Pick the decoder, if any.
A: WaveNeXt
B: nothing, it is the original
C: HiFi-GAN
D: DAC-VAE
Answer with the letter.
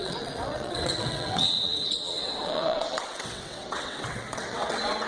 A